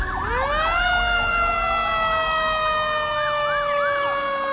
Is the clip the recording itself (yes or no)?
yes